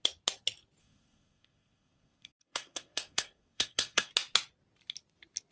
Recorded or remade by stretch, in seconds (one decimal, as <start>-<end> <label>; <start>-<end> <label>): 0.0-0.8 recorded; 0.8-4.1 remade; 4.1-5.5 recorded